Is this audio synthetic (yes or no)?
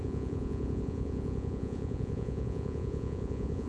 yes